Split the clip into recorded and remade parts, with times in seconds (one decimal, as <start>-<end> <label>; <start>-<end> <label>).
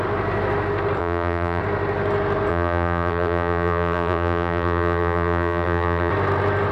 0.0-1.0 recorded; 1.0-1.6 remade; 1.6-2.5 recorded; 2.5-6.1 remade; 6.1-6.7 recorded